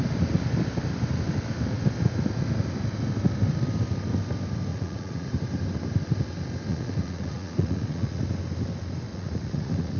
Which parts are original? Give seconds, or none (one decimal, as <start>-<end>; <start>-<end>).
0.0-4.7; 5.3-6.7; 8.2-9.1